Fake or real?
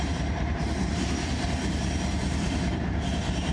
fake